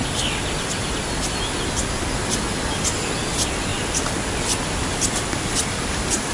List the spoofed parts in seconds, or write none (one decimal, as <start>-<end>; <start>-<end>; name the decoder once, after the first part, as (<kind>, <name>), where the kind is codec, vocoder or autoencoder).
none